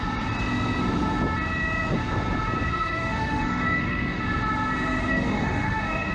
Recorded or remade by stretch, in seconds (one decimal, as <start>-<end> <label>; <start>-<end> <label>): 0.0-2.7 recorded; 2.7-4.2 remade; 4.2-5.0 recorded; 5.0-6.1 remade